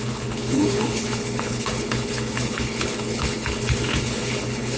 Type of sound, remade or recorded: remade